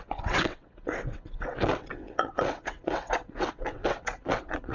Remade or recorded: remade